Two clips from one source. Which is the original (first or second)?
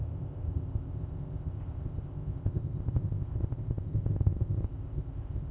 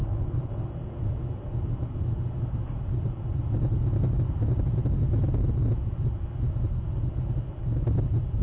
second